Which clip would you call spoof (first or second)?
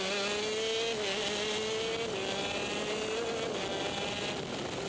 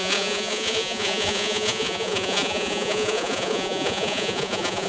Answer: second